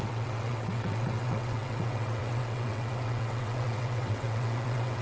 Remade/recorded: remade